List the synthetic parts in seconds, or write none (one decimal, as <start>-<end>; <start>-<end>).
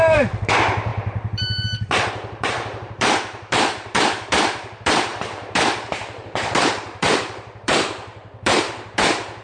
0.0-9.4